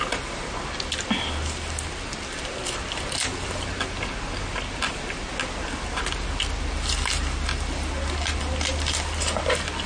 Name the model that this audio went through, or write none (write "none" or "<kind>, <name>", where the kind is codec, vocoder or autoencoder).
none